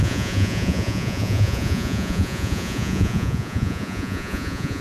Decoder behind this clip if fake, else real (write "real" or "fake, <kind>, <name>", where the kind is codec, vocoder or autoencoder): fake, vocoder, Vocos